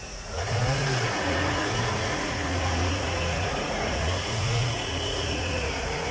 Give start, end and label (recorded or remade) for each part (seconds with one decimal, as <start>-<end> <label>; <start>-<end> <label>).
0.0-6.1 remade